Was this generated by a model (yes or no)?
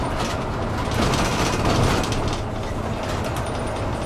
no